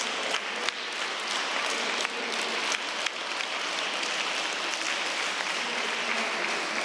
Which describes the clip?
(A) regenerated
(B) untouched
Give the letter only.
B